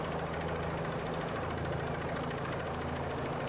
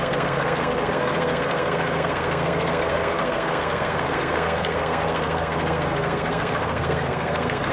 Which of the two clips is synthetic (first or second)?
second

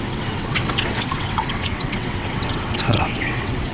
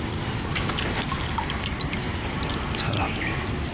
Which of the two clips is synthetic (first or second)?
first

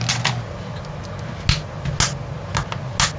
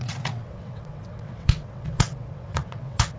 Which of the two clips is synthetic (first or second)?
second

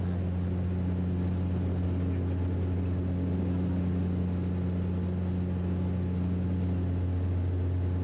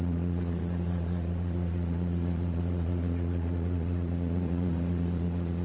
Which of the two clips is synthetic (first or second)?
second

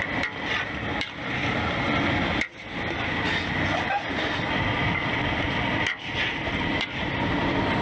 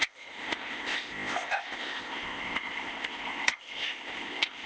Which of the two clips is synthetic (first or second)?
second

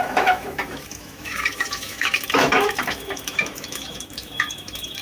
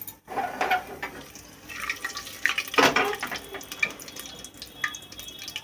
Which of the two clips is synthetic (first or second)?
first